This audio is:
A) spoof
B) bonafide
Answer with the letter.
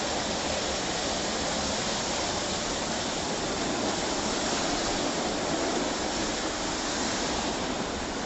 B